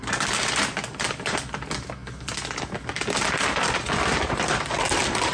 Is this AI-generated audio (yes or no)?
no